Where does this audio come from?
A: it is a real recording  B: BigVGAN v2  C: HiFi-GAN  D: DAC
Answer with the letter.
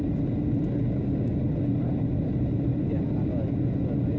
A